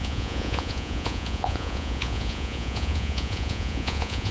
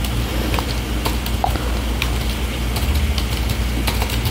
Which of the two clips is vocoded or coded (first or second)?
first